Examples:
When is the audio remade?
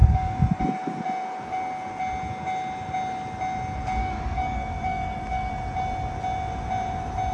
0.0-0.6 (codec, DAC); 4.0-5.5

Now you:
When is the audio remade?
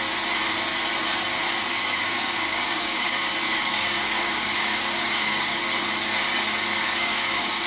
1.7-5.6 (codec, DAC); 6.8-7.7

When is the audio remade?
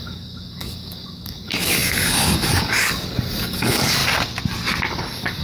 0.0-4.0 (codec, DAC); 4.9-5.4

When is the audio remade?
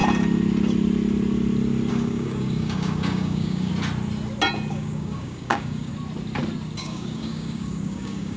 1.9-3.7 (codec, DAC); 4.7-5.9; 6.8-8.4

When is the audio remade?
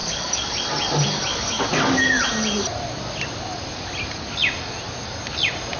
0.0-0.5 (codec, DAC); 1.3-2.2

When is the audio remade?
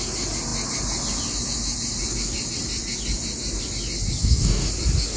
4.2-4.7 (codec, DAC)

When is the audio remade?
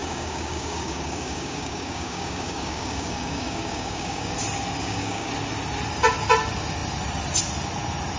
0.0-4.3 (codec, DAC); 4.8-5.3